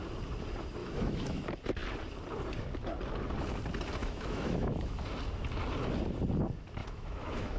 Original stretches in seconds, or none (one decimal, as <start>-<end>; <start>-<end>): 0.0-0.8; 1.4-4.0; 5.0-6.8